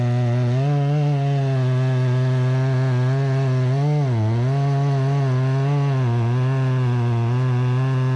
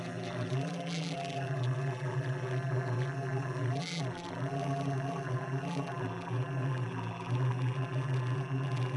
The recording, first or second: first